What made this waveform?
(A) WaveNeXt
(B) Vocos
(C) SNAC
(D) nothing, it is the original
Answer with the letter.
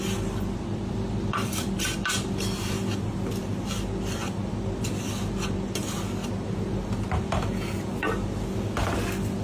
D